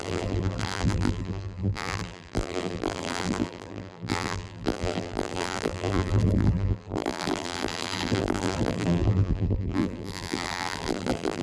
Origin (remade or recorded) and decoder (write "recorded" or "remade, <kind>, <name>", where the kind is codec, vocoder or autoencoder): remade, vocoder, BigVGAN v2